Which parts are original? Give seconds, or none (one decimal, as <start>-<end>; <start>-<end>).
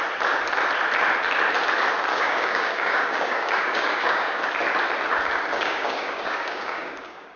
0.0-2.1; 4.4-5.5